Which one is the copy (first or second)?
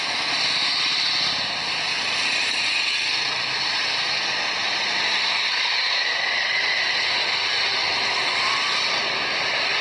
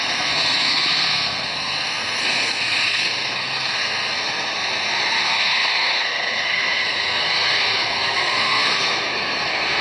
second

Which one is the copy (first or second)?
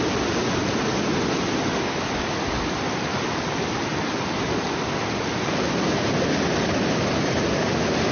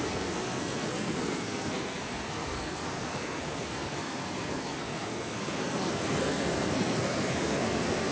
second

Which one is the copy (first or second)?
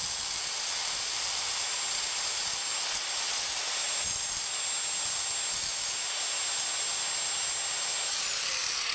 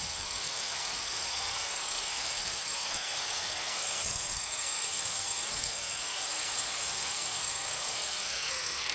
second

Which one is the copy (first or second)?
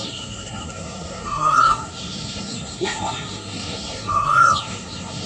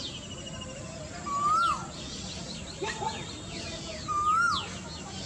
first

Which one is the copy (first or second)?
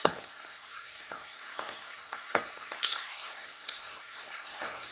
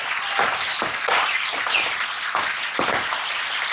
first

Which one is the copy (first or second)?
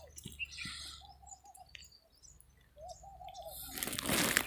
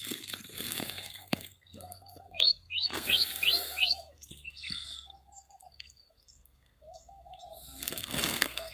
second